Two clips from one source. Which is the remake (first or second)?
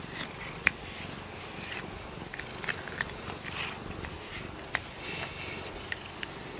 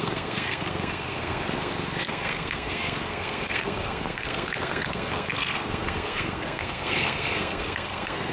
second